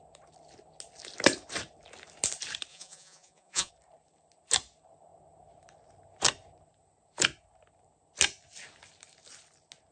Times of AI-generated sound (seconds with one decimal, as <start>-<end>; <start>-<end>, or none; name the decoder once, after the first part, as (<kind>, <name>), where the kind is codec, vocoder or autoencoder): 2.7-3.7 (vocoder, Vocos)